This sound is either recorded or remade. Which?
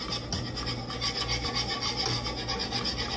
recorded